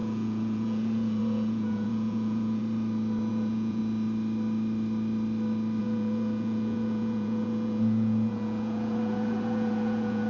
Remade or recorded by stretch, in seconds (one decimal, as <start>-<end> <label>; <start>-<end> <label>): 0.0-2.6 remade; 2.6-3.3 recorded; 3.3-3.8 remade; 3.8-5.8 recorded; 5.8-10.3 remade